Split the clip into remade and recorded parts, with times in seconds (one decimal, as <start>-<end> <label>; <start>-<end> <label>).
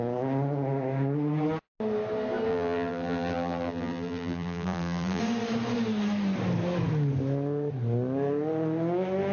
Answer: 0.0-2.5 recorded; 2.5-5.2 remade; 5.2-9.3 recorded